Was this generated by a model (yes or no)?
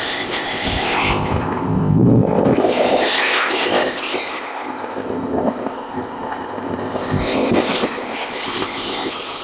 yes